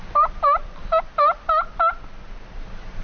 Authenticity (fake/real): real